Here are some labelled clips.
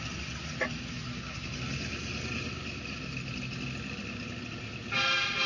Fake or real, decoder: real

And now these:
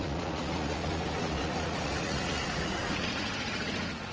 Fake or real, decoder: fake, vocoder, Vocos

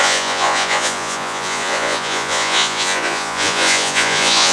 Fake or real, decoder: fake, vocoder, Vocos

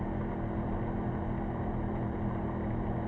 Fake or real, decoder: fake, vocoder, BigVGAN v2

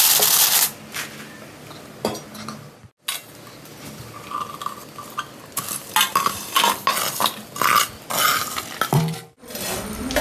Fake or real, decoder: real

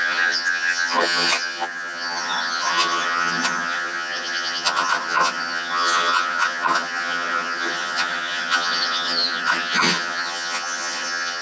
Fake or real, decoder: fake, vocoder, HiFi-GAN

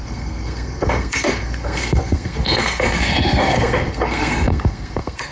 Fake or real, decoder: fake, codec, SNAC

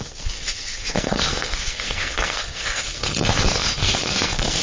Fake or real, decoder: fake, codec, SNAC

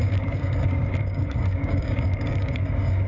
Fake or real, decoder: fake, codec, DAC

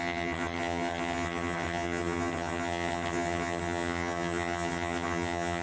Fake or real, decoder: fake, vocoder, HiFi-GAN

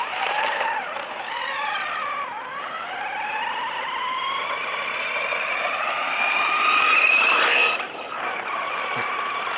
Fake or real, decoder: fake, vocoder, BigVGAN v2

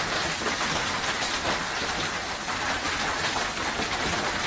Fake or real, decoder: real